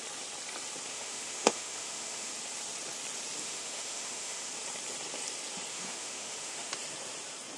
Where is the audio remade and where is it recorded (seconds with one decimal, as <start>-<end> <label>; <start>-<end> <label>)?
0.0-0.9 recorded; 0.9-2.3 remade; 2.3-3.4 recorded; 3.4-4.5 remade; 4.5-5.7 recorded; 5.7-6.7 remade; 6.7-7.6 recorded